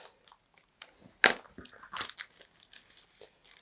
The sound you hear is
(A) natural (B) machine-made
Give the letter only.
A